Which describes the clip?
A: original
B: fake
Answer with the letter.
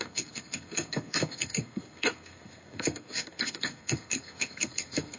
B